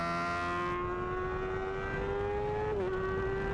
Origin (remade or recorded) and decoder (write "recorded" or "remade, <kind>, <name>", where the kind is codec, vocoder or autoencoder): recorded